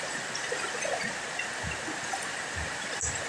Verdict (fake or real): real